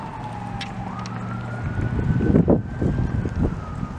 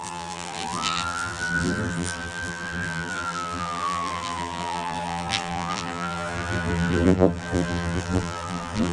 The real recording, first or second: first